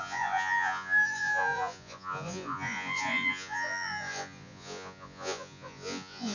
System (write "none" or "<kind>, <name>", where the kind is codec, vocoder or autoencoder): vocoder, Vocos